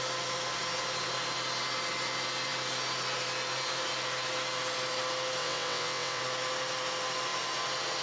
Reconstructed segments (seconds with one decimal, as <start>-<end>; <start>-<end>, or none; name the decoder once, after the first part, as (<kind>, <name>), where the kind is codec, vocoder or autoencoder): 5.4-6.2 (vocoder, WaveNeXt)